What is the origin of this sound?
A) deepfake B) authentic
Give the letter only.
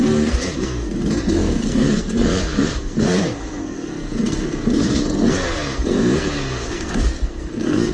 A